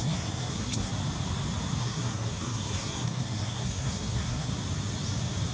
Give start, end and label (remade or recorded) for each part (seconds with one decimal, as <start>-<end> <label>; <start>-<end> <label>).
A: 0.0-0.9 remade; 0.9-1.8 recorded; 1.8-4.5 remade; 4.5-5.5 recorded